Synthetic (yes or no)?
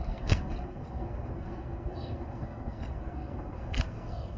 yes